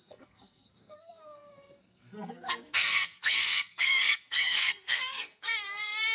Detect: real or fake fake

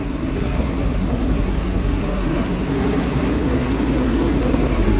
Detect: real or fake fake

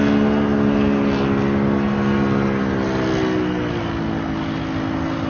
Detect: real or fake real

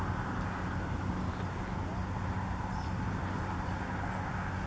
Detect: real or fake real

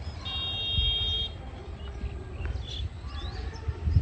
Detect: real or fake real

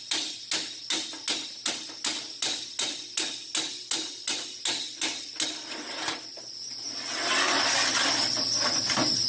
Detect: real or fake real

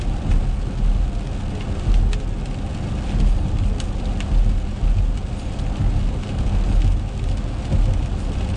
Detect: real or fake real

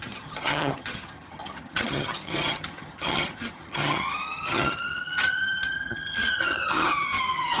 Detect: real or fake fake